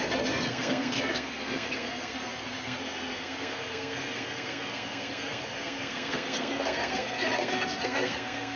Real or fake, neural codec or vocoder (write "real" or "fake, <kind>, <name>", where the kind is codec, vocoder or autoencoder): fake, codec, SNAC